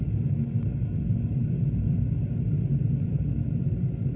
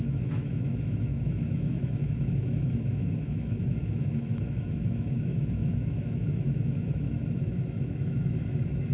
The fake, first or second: second